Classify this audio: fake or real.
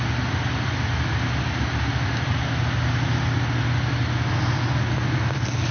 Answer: real